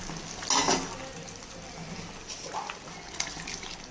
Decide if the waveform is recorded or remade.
recorded